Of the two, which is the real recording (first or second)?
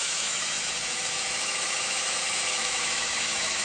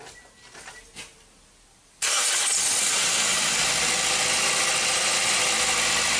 second